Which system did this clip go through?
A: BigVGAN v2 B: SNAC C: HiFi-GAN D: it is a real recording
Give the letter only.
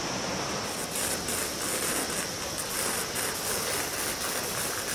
D